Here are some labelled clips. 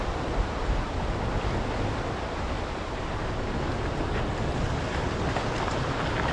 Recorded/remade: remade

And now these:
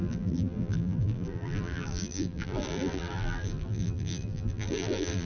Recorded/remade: remade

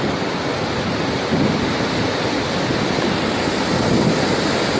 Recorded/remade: recorded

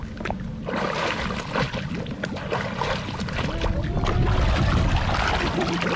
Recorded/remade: recorded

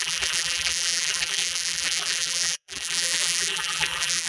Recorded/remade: remade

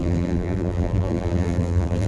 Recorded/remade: remade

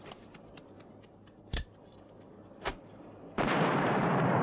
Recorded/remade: remade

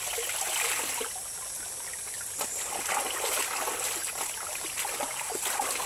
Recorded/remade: recorded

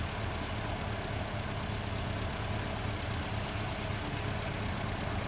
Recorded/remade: recorded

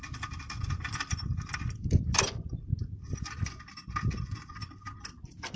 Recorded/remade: remade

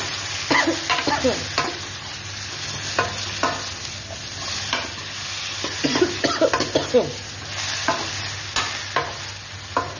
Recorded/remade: recorded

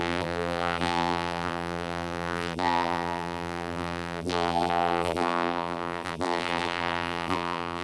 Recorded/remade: remade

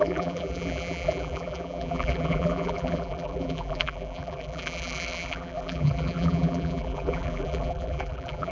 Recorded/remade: remade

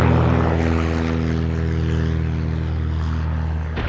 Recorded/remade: recorded